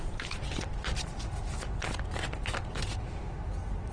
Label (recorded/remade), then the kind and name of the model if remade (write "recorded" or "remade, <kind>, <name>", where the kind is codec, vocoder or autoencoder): recorded